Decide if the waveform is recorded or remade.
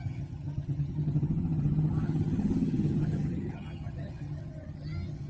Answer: remade